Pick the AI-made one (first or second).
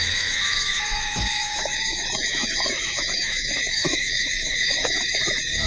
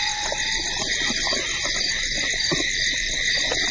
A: first